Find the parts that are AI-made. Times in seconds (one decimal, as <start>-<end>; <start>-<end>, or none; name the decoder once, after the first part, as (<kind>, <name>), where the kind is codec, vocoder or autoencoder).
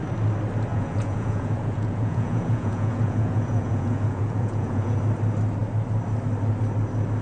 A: 0.7-5.0 (vocoder, Vocos)